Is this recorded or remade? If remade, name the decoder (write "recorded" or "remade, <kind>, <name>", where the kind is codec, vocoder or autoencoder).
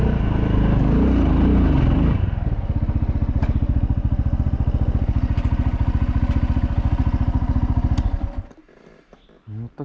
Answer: recorded